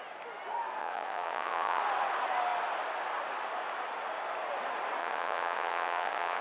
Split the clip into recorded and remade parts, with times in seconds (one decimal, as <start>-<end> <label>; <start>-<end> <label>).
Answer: 0.0-0.8 recorded; 0.8-1.8 remade; 1.8-5.0 recorded; 5.0-6.4 remade